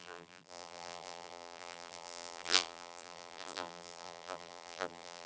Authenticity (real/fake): fake